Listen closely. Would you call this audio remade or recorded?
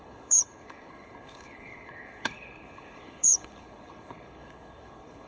remade